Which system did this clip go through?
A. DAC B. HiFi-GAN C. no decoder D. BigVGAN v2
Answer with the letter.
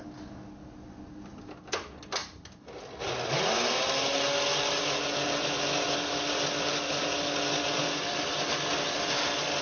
C